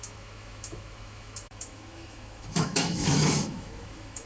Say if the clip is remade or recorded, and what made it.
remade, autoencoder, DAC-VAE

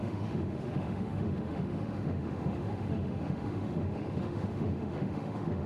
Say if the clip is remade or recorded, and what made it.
remade, autoencoder, DAC-VAE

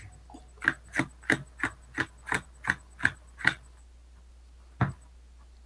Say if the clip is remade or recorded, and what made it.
recorded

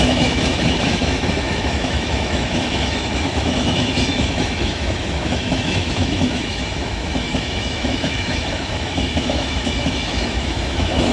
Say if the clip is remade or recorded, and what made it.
remade, autoencoder, DAC-VAE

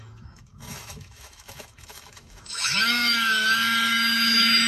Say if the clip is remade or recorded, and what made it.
remade, autoencoder, DAC-VAE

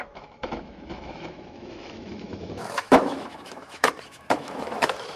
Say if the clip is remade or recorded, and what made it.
remade, autoencoder, DAC-VAE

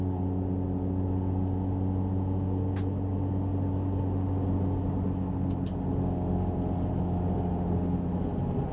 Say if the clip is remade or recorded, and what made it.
recorded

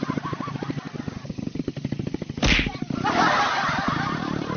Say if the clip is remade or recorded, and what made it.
recorded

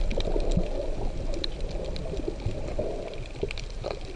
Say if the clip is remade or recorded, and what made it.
recorded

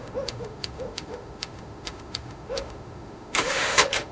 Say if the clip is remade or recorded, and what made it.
remade, autoencoder, DAC-VAE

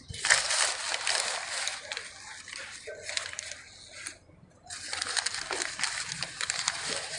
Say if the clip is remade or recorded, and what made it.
recorded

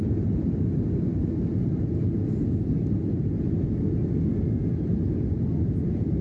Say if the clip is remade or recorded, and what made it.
recorded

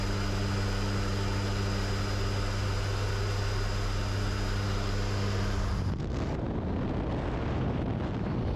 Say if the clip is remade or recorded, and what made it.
recorded